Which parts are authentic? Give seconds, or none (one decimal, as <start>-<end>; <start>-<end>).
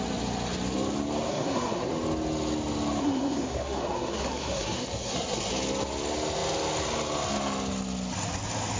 0.0-1.3; 1.9-3.0; 5.5-8.8